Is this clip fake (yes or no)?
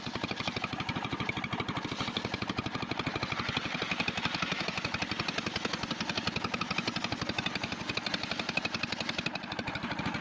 no